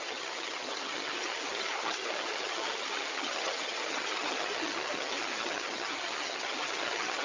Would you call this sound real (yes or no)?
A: no